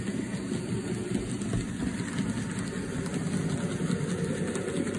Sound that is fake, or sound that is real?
real